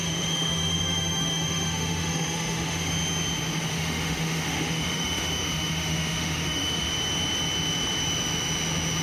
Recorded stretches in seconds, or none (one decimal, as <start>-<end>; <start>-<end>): 2.9-3.7; 6.9-9.0